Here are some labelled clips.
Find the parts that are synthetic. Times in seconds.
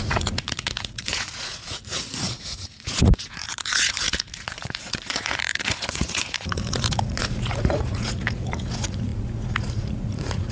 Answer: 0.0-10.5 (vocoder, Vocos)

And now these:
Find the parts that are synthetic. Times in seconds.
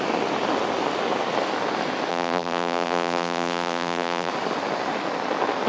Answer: 2.1-4.3 (vocoder, BigVGAN v2)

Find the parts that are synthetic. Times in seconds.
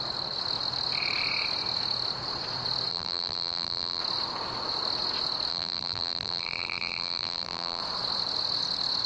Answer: 2.9-4.0 (vocoder, BigVGAN v2); 5.5-7.8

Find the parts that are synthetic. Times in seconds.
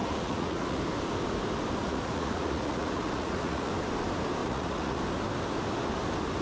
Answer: 0.0-0.8 (vocoder, Vocos); 1.8-3.7; 4.4-5.0